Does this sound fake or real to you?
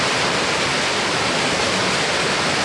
real